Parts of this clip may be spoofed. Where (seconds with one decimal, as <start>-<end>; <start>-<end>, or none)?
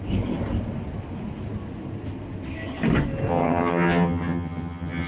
3.3-5.1